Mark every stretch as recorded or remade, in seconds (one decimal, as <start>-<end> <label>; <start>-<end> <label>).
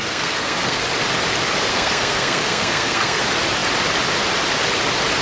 0.0-0.8 remade; 0.8-1.7 recorded; 1.7-3.2 remade; 3.2-5.2 recorded